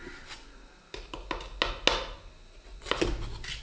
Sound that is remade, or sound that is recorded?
recorded